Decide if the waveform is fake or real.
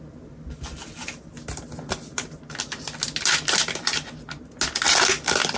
real